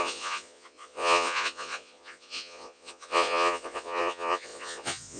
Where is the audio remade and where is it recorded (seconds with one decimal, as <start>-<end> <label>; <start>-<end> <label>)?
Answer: 0.0-5.2 remade